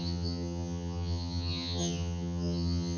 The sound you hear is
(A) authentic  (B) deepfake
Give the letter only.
B